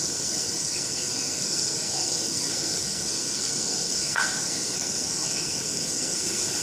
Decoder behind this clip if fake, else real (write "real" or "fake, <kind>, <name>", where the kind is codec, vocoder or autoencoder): fake, codec, SNAC